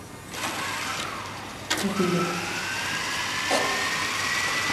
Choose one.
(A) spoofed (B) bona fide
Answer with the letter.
B